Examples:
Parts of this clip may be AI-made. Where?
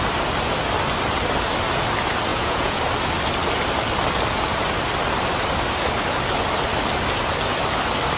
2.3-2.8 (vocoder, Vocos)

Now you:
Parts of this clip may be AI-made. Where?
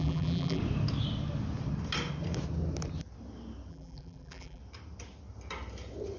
0.0-0.6 (vocoder, BigVGAN v2); 3.7-4.6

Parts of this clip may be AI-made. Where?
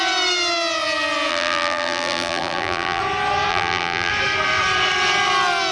1.3-3.0 (vocoder, BigVGAN v2); 3.5-4.1